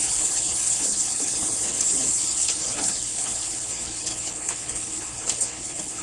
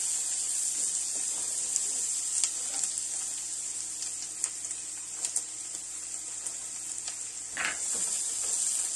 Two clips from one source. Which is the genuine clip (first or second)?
second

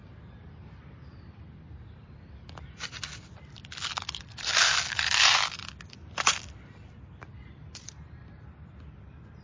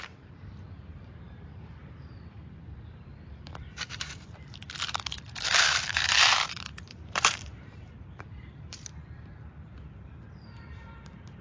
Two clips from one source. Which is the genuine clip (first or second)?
first